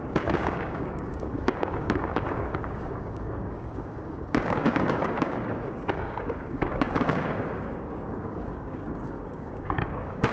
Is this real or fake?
fake